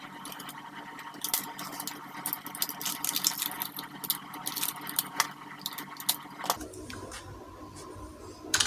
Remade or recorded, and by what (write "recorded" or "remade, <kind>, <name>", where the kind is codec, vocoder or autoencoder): recorded